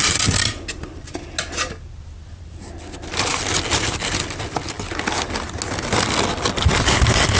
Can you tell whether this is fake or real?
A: real